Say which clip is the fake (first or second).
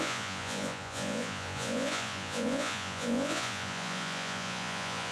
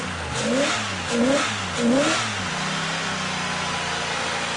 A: first